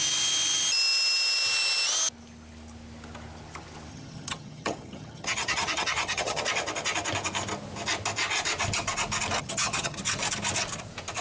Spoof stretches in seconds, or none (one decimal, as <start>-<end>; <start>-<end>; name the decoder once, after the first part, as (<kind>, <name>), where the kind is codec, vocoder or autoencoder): 3.9-6.4 (vocoder, HiFi-GAN); 9.4-10.0